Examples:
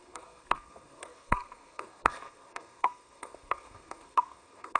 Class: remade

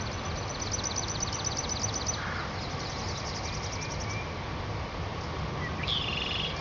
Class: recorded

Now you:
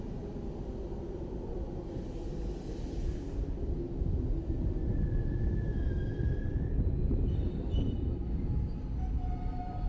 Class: recorded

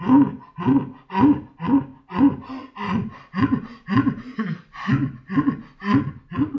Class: recorded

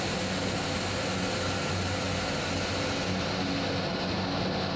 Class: recorded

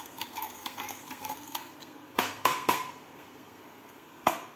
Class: remade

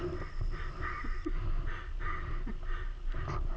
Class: recorded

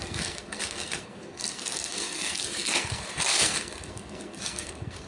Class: remade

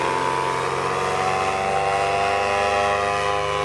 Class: recorded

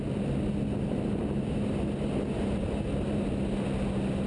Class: recorded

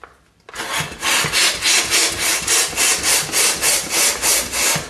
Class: recorded